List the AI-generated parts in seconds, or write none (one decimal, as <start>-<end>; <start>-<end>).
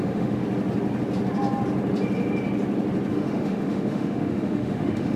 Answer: 0.0-0.4; 3.1-5.2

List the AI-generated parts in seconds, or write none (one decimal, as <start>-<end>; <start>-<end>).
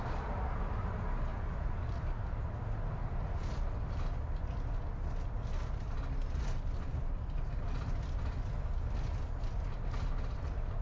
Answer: none